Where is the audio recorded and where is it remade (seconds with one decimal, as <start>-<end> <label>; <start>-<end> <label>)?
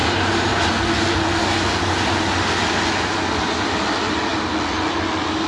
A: 0.0-0.7 remade; 0.7-5.5 recorded